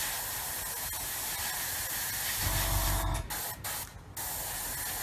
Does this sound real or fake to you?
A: real